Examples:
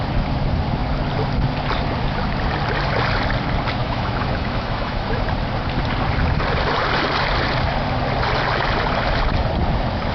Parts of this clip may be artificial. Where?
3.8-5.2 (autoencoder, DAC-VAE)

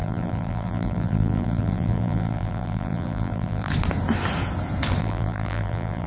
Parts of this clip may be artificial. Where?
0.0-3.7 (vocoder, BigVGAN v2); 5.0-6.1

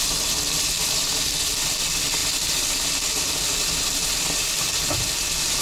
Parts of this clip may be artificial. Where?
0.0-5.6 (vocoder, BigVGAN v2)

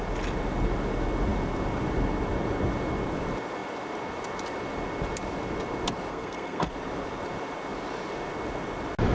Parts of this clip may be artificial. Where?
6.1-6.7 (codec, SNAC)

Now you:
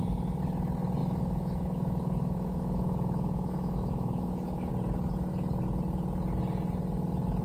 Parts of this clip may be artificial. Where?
1.0-4.7 (autoencoder, DAC-VAE)